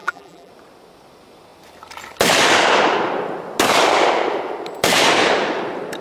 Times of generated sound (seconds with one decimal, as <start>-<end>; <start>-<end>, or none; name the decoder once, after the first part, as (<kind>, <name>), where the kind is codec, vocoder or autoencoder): 0.0-0.5 (vocoder, BigVGAN v2)